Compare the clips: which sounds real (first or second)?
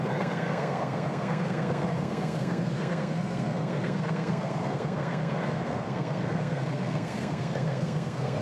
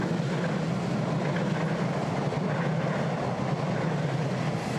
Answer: second